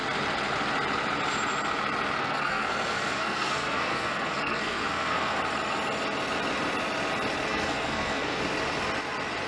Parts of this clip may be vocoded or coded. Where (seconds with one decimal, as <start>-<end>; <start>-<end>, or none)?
2.2-5.4; 7.5-8.4

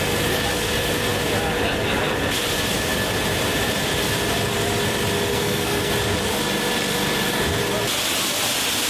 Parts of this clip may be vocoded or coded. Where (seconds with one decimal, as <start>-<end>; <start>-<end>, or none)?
5.3-5.9

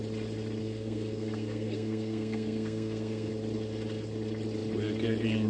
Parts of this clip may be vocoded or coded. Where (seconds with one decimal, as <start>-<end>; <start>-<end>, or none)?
0.6-3.3

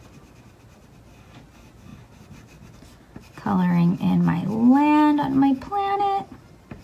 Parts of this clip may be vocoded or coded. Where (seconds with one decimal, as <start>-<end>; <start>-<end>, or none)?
none